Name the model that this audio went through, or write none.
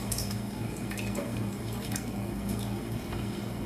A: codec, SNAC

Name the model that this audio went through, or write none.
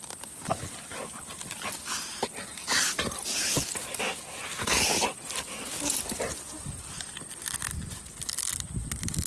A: none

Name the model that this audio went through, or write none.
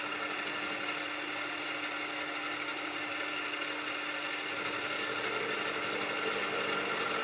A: none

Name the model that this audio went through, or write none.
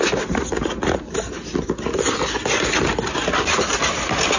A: none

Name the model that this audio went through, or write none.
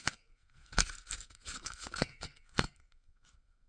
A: codec, SNAC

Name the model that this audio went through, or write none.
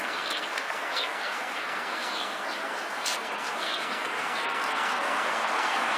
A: codec, SNAC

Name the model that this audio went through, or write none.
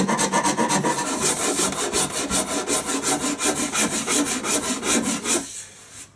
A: none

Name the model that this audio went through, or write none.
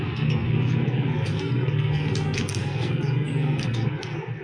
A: codec, SNAC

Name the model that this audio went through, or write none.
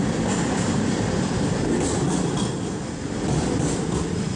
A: none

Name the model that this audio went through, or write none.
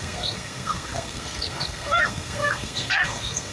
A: codec, SNAC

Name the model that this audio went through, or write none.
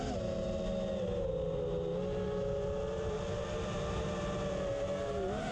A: none